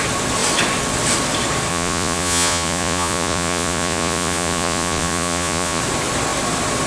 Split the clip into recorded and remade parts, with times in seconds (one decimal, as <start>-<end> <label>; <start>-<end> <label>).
0.0-1.7 recorded; 1.7-5.8 remade; 5.8-6.9 recorded